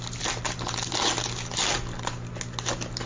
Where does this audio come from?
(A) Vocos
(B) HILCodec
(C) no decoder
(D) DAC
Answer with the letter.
C